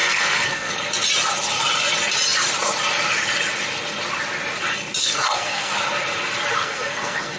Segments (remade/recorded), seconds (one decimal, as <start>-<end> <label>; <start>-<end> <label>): 0.0-0.7 remade; 0.7-5.0 recorded; 5.0-5.7 remade; 5.7-6.5 recorded; 6.5-7.4 remade